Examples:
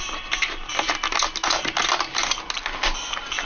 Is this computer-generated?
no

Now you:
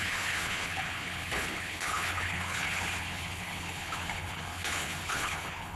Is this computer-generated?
yes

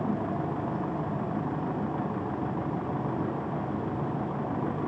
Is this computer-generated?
no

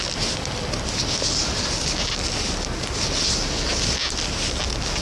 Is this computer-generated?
no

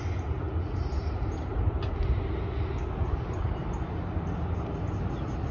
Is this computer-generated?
no